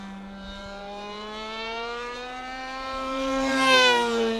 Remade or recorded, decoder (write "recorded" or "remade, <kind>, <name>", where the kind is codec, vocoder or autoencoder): remade, vocoder, BigVGAN v2